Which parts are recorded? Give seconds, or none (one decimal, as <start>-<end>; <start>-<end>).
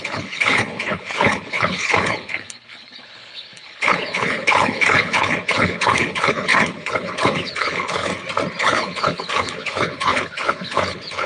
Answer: 8.1-8.6